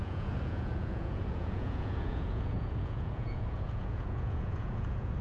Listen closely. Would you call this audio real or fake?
fake